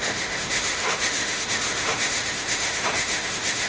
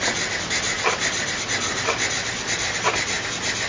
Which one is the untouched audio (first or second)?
second